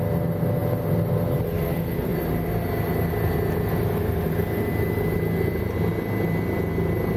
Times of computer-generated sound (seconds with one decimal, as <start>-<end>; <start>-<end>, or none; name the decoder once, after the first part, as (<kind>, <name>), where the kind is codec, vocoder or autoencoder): none